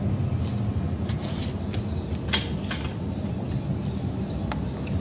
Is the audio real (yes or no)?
yes